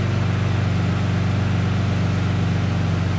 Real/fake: real